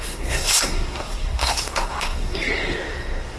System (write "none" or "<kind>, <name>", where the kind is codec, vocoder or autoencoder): codec, SNAC